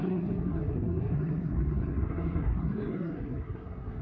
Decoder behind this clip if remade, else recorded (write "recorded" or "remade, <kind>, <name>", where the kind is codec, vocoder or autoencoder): remade, codec, SNAC